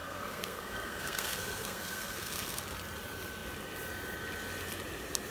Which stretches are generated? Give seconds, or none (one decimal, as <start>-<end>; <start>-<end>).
0.0-2.6

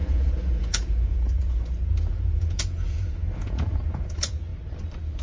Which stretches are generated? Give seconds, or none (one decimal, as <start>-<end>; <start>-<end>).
0.0-4.5

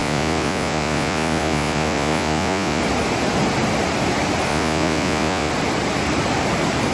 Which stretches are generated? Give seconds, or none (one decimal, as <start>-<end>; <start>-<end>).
0.0-2.8; 4.5-5.5

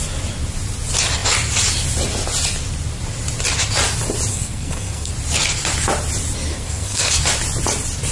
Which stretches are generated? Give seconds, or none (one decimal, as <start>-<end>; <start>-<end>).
4.3-5.1; 6.5-7.2

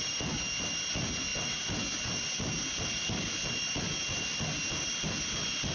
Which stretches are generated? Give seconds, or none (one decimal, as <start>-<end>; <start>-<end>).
none